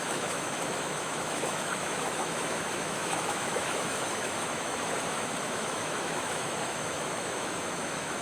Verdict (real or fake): fake